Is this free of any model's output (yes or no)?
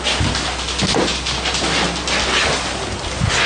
yes